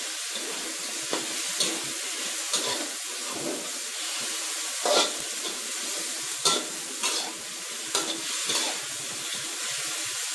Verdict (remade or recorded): recorded